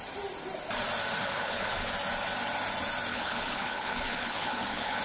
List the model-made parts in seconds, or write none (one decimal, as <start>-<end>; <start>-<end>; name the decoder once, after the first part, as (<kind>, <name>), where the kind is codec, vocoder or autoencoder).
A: 1.2-1.9 (codec, HILCodec); 3.1-5.0